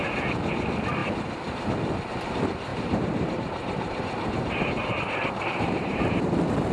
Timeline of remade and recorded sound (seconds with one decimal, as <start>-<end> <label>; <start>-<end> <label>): 0.0-2.7 recorded; 2.7-6.2 remade; 6.2-6.7 recorded